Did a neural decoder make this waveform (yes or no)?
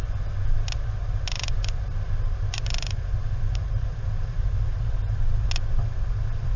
no